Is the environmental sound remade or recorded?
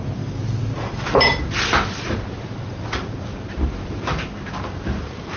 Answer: remade